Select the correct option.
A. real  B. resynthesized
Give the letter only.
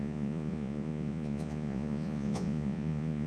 B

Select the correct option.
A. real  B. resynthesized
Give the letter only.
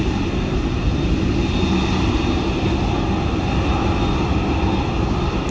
A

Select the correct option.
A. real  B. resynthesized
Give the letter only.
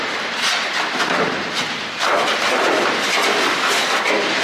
B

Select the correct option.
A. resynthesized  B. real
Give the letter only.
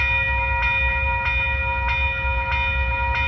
B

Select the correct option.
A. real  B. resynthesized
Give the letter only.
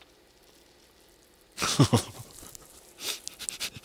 A